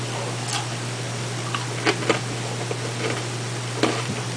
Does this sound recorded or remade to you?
recorded